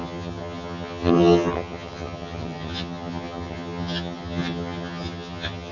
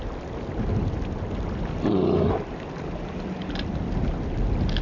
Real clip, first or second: second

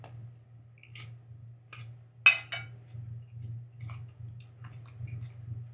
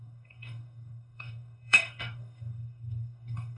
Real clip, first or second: first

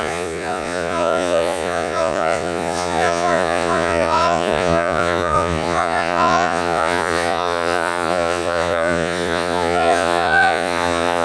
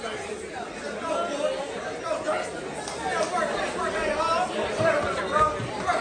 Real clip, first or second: second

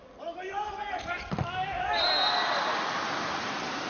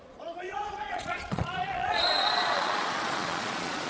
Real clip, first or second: first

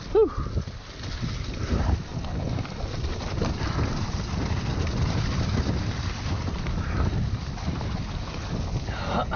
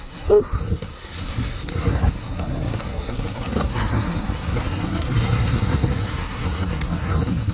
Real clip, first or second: first